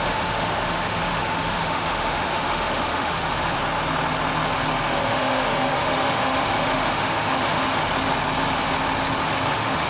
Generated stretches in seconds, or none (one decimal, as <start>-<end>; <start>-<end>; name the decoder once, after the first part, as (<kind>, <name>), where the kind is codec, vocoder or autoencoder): 0.0-3.6 (autoencoder, DAC-VAE); 5.1-7.9; 9.5-9.9